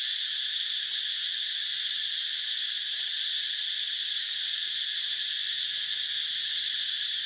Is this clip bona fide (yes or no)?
no